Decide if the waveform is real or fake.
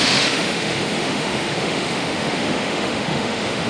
fake